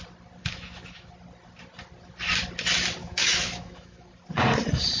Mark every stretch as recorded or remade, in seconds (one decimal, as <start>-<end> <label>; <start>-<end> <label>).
0.0-0.4 recorded; 0.4-1.1 remade; 1.1-3.0 recorded; 3.0-4.1 remade; 4.1-5.0 recorded